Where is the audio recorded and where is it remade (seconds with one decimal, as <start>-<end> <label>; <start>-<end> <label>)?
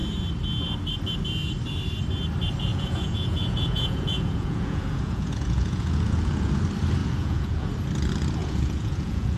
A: 0.0-2.7 recorded; 2.7-6.6 remade; 6.6-7.0 recorded; 7.0-7.7 remade; 7.7-8.4 recorded; 8.4-9.4 remade